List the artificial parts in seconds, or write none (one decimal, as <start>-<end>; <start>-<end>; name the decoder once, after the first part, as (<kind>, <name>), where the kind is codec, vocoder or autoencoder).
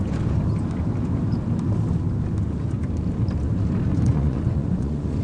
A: 3.9-5.2 (vocoder, Vocos)